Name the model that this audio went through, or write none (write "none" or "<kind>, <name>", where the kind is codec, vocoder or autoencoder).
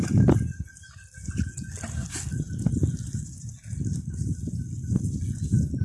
none